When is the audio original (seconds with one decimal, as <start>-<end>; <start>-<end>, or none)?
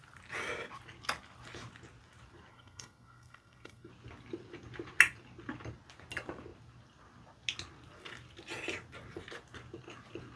0.0-2.5; 3.9-10.4